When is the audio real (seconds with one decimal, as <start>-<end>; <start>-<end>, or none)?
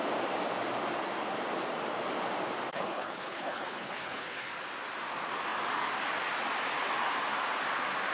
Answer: 0.0-2.7; 4.5-8.1